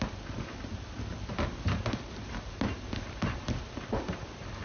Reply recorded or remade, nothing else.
recorded